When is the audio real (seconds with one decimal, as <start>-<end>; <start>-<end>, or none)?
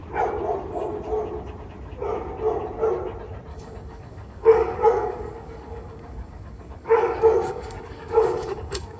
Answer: 0.0-3.5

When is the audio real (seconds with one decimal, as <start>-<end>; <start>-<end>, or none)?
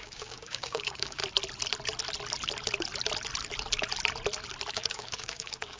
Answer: 1.2-4.7